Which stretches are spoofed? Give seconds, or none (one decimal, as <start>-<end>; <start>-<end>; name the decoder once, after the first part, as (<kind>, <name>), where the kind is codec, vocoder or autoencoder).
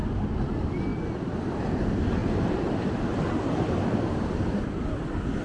none